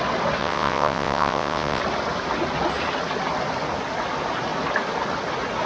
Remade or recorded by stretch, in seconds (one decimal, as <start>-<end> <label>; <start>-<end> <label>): 0.0-0.4 recorded; 0.4-1.8 remade; 1.8-5.7 recorded